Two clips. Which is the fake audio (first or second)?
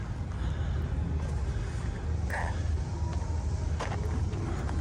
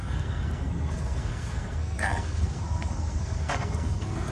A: second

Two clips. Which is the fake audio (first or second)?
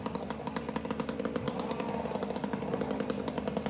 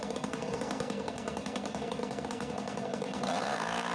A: second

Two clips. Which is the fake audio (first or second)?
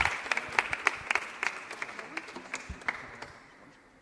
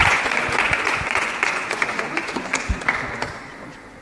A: second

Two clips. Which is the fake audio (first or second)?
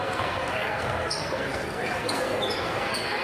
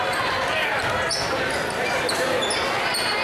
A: first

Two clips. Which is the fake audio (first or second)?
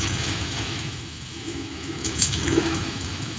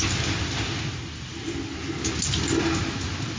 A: first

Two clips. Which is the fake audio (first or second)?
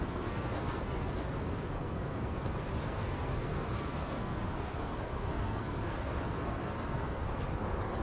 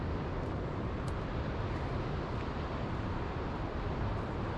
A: first